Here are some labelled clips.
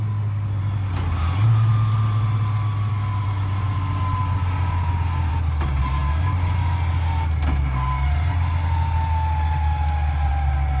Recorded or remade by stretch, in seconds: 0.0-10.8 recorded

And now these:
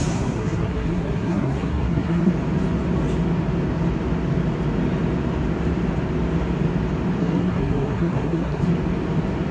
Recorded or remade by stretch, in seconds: 0.0-2.3 remade; 2.3-7.2 recorded; 7.2-8.6 remade; 8.6-9.5 recorded